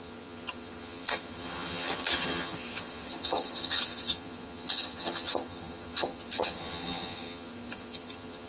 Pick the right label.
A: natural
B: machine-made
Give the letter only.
B